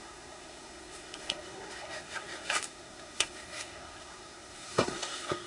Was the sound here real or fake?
fake